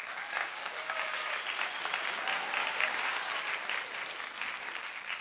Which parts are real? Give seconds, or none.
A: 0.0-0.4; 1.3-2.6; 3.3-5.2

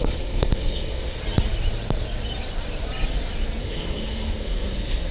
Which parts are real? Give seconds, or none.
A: 1.2-3.6

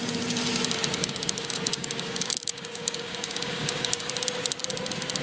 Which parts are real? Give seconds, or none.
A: 0.0-1.0; 4.1-5.2

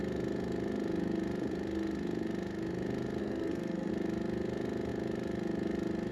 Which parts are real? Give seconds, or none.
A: 0.0-3.2; 3.9-6.1

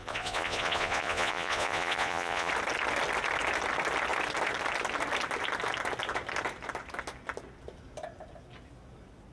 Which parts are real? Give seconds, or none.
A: 2.5-9.3

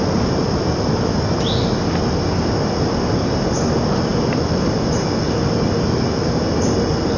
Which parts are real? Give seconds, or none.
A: 0.0-4.1; 5.4-7.2

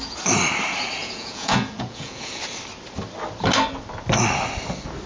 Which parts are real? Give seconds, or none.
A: 0.0-1.0; 2.4-5.1

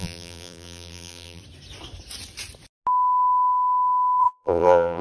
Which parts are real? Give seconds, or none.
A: 1.4-4.2